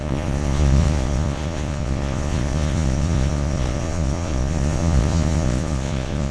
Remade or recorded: remade